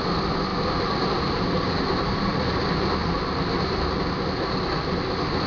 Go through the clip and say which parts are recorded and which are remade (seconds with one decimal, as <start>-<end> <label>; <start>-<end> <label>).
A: 0.0-5.5 recorded